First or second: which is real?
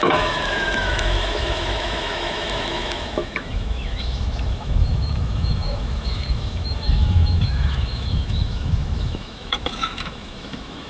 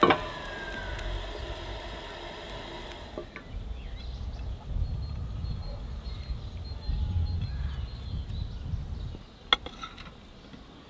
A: second